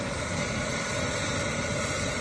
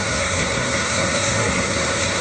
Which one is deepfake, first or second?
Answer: second